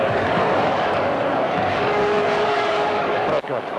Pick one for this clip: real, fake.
fake